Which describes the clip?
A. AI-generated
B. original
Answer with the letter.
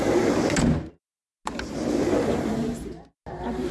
B